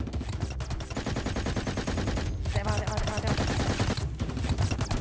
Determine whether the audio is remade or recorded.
recorded